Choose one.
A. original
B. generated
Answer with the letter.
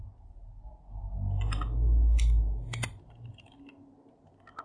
A